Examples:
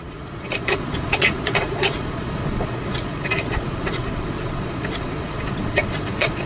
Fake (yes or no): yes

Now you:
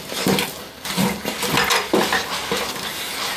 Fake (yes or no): no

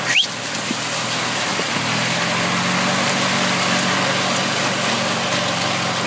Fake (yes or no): no